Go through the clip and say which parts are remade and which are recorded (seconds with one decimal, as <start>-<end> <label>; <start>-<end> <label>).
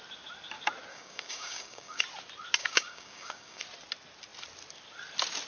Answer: 0.0-0.9 recorded; 0.9-2.0 remade; 2.0-2.6 recorded; 2.6-3.6 remade; 3.6-5.5 recorded